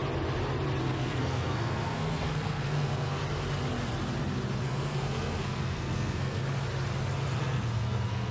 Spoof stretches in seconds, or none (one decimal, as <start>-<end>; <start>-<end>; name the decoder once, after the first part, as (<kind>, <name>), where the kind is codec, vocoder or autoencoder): 0.8-3.2 (codec, SNAC); 4.6-6.4; 7.4-8.3